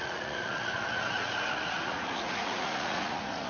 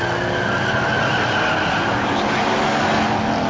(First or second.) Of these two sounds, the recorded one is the second